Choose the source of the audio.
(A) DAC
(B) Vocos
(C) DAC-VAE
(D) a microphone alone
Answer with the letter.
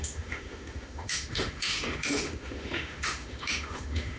C